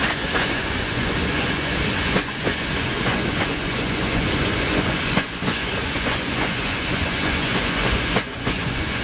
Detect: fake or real fake